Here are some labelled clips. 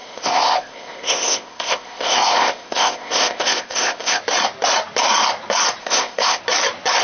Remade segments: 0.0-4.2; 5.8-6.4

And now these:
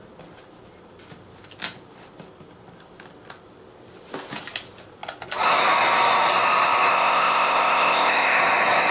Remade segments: 6.9-8.4

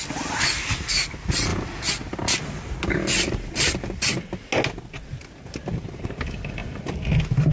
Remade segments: none

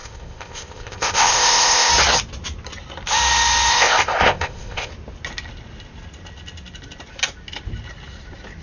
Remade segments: 0.0-1.9; 3.7-4.9